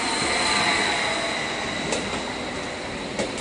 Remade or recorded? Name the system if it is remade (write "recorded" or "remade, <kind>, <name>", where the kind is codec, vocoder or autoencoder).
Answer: recorded